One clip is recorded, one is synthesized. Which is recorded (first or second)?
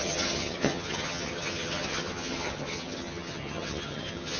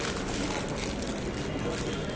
second